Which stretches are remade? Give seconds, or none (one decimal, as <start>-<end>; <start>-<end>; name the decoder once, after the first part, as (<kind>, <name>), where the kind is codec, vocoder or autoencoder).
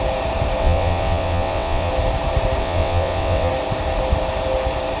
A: 0.6-1.9 (vocoder, WaveNeXt); 2.6-3.5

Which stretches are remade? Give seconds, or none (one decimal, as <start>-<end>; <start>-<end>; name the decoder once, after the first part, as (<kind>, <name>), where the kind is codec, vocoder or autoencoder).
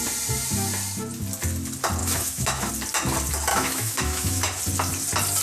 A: 2.0-2.7 (autoencoder, DAC-VAE); 3.5-4.6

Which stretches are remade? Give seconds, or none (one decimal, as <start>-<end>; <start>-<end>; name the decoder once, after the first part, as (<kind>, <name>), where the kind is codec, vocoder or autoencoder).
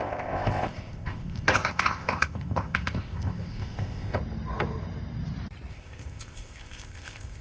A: 0.0-4.2 (codec, ZipCodec); 5.7-7.4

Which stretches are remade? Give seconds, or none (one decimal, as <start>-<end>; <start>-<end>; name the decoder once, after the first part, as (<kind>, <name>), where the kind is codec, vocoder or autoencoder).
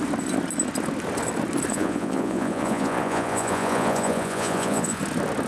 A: 1.7-5.0 (vocoder, Vocos)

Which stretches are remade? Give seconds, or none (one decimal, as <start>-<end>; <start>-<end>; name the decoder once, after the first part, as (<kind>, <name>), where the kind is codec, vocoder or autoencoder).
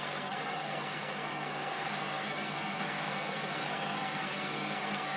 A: 0.0-5.2 (codec, SNAC)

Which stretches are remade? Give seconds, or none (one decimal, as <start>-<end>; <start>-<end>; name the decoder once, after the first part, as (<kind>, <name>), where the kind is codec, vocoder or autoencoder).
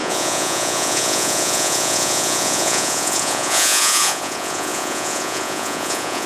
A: 0.0-6.3 (vocoder, Vocos)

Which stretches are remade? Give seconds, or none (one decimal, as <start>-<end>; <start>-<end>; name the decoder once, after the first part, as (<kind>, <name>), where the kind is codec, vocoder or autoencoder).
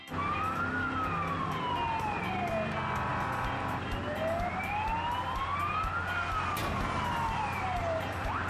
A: 6.6-8.5 (vocoder, BigVGAN v2)